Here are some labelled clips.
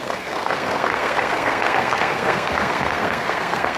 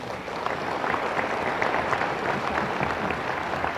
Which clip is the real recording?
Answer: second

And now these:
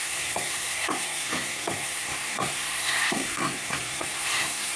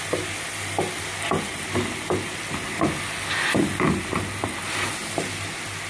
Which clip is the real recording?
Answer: second